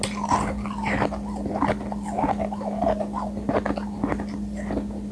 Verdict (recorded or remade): recorded